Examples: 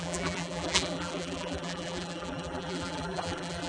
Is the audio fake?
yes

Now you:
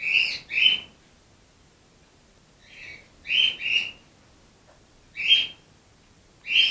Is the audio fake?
no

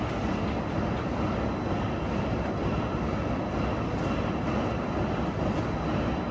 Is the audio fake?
no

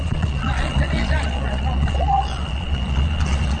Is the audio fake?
yes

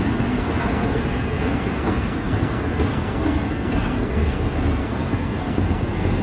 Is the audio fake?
yes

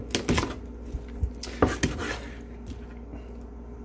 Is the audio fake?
no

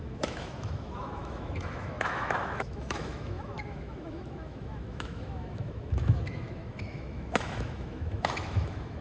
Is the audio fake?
yes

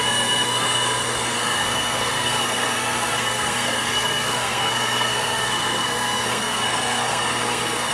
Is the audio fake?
yes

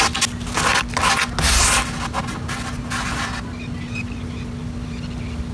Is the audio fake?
no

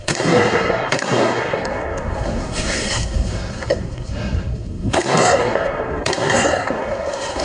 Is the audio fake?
yes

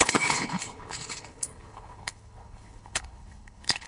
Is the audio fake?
yes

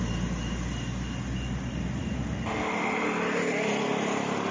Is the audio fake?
no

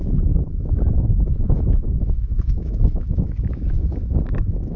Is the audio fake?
yes